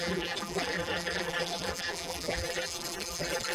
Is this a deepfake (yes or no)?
yes